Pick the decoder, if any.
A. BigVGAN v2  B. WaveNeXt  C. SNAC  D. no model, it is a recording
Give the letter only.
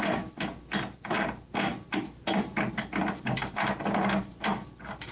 D